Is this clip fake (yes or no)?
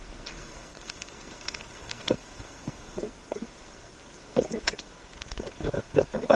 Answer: yes